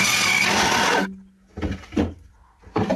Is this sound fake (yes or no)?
no